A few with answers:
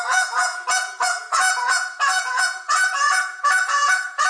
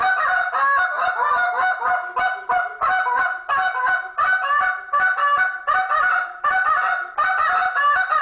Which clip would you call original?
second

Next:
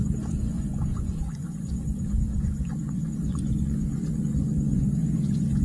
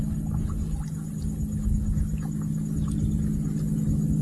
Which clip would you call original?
second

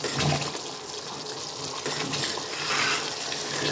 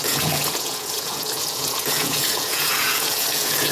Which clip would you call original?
first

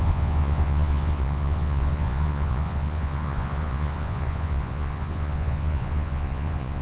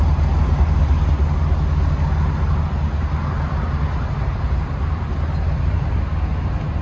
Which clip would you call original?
second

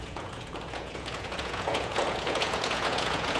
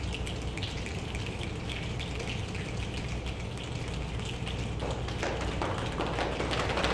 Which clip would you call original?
second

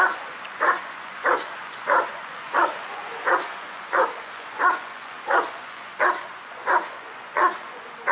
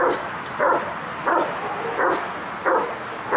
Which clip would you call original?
second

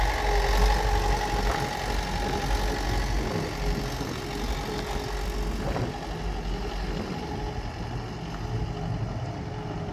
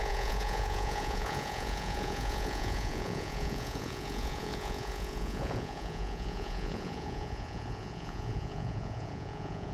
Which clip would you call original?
first